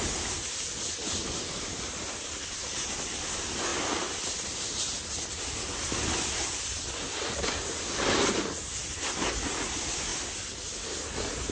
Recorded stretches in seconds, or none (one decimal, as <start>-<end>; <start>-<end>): 0.0-11.5